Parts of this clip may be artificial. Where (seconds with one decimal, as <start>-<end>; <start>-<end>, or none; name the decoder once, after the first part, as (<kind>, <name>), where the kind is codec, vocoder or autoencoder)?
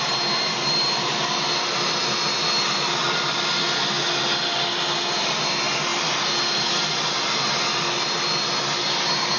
none